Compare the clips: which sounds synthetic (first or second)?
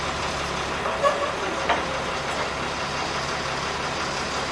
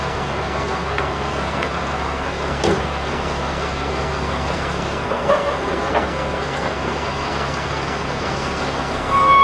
second